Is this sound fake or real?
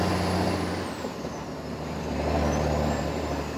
real